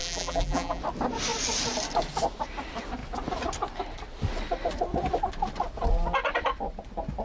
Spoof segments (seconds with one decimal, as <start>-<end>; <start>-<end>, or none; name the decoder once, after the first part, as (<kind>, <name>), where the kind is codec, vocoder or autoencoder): 0.0-0.8 (vocoder, BigVGAN v2)